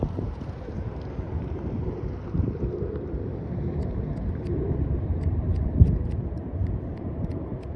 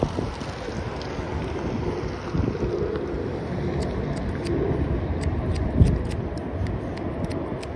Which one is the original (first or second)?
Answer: second